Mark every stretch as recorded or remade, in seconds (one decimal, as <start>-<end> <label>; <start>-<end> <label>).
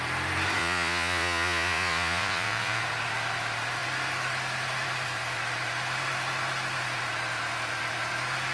0.0-0.6 recorded; 0.6-2.8 remade; 2.8-8.5 recorded